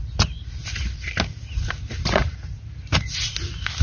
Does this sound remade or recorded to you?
recorded